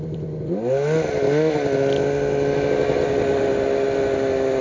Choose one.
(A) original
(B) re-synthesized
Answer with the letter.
A